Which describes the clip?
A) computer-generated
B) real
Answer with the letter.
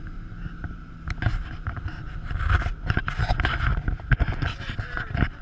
B